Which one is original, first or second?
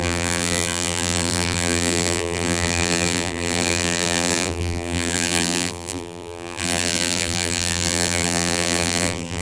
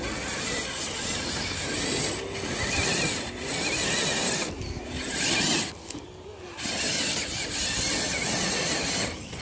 second